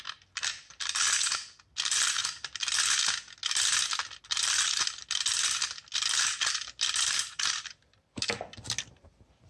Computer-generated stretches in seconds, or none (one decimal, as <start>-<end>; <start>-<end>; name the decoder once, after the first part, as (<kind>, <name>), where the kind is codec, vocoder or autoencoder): none